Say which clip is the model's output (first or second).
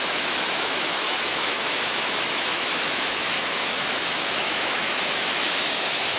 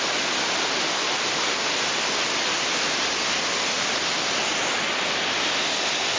first